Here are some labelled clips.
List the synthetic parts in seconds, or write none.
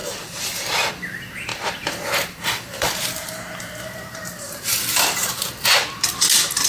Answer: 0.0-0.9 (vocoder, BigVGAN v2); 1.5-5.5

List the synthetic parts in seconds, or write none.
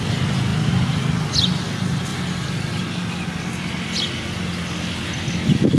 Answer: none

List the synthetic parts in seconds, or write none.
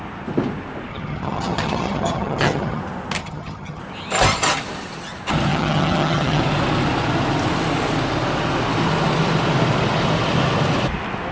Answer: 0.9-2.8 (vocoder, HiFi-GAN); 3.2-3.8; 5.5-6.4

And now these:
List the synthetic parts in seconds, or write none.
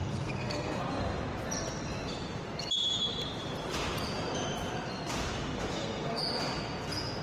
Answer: 0.0-0.8 (codec, SNAC); 5.7-6.2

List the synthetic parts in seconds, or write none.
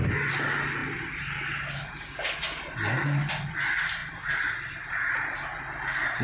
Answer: none